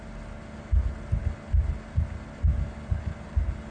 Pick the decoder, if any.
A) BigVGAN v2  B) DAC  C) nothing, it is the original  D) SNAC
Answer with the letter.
C